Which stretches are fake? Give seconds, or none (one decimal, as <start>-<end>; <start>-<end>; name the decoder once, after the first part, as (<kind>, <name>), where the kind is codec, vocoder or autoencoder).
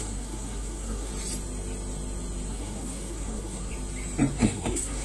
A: 0.0-1.1 (codec, SNAC); 2.5-3.7; 4.3-5.0